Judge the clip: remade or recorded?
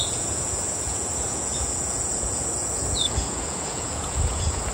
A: remade